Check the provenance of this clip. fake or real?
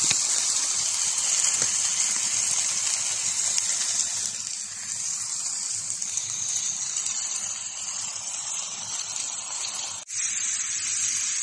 real